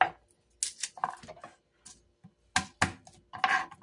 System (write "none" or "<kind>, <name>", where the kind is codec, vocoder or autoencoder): none